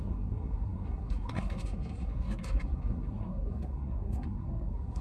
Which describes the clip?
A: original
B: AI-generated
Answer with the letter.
B